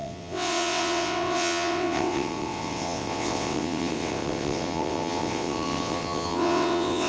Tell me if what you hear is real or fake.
fake